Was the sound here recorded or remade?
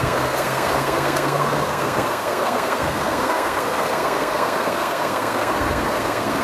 remade